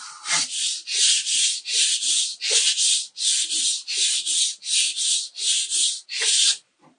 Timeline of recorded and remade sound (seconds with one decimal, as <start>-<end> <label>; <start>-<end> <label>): 0.0-0.9 remade; 0.9-5.1 recorded; 5.1-7.0 remade